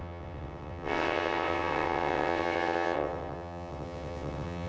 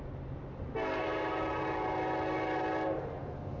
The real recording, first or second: second